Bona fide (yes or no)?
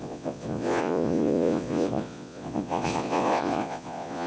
no